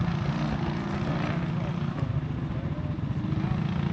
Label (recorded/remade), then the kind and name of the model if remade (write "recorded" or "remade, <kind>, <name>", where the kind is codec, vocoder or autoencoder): recorded